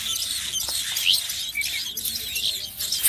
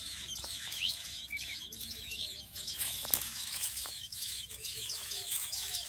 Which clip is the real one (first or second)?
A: first